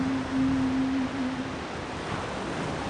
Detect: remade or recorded recorded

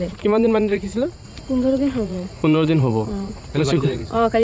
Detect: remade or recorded remade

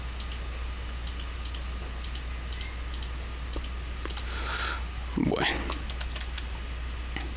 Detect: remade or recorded recorded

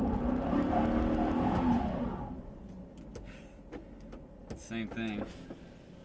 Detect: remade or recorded recorded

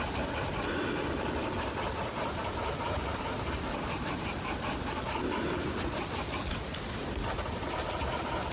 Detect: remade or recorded recorded